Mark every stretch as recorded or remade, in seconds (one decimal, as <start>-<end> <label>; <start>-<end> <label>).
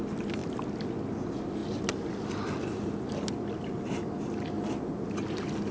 0.0-5.7 recorded